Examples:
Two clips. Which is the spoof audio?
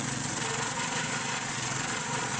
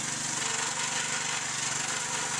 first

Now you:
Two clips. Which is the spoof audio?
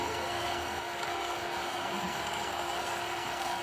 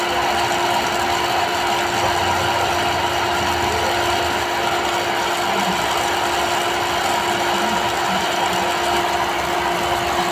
first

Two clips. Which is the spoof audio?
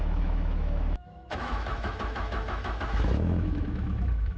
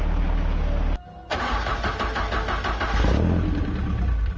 first